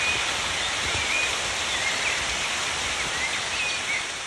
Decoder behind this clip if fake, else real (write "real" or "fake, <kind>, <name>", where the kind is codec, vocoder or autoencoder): real